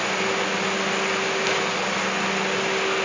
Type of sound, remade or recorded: recorded